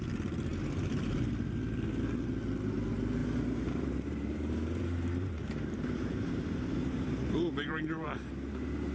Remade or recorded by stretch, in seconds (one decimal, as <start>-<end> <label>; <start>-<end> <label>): 0.0-0.5 recorded; 0.5-1.3 remade; 1.3-3.2 recorded; 3.2-8.3 remade; 8.3-8.9 recorded